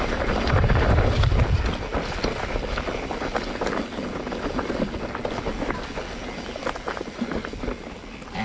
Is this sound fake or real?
real